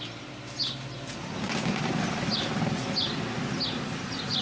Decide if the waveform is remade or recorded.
recorded